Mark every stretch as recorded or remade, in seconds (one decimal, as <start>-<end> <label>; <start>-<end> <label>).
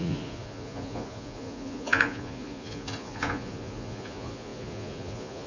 0.0-5.5 remade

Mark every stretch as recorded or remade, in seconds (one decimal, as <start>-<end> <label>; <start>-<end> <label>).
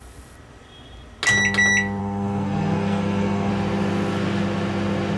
0.0-2.0 recorded; 2.0-3.5 remade; 3.5-5.2 recorded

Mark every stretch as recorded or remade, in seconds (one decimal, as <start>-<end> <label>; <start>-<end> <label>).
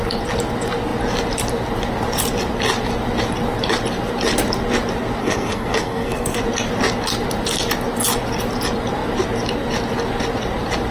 0.0-5.2 recorded; 5.2-6.4 remade; 6.4-10.9 recorded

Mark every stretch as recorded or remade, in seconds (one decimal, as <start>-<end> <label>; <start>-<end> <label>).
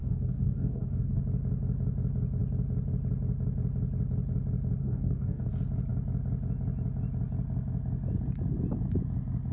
0.0-1.2 remade; 1.2-4.8 recorded; 4.8-5.5 remade; 5.5-9.5 recorded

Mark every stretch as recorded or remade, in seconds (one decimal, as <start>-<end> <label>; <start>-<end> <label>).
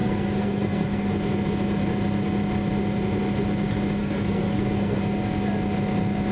0.0-1.1 remade; 1.1-4.0 recorded; 4.0-5.0 remade; 5.0-6.3 recorded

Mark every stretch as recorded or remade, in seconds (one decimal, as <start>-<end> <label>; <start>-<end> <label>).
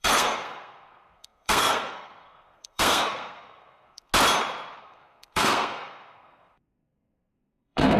0.0-4.1 remade; 4.1-4.8 recorded; 4.8-8.0 remade